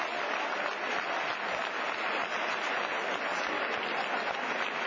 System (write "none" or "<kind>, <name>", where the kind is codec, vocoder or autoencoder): none